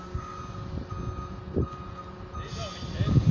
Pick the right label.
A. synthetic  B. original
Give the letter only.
B